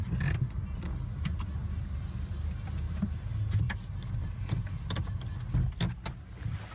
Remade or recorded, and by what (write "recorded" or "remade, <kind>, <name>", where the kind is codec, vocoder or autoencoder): recorded